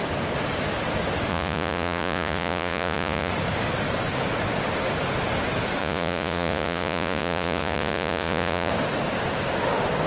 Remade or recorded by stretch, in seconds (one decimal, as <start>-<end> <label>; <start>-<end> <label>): 0.0-1.3 recorded; 1.3-3.3 remade; 3.3-5.8 recorded; 5.8-8.7 remade; 8.7-10.1 recorded